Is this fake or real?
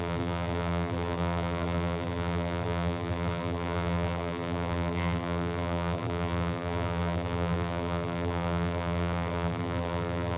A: fake